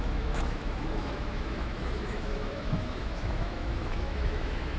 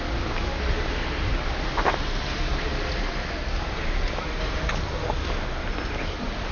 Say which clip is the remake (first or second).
first